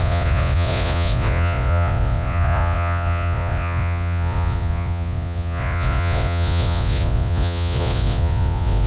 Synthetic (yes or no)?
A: yes